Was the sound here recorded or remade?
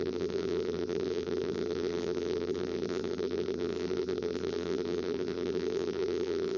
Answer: remade